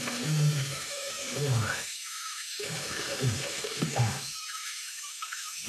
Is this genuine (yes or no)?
no